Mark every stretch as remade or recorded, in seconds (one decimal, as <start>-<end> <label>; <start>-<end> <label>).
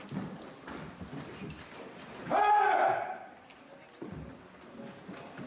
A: 0.0-5.5 recorded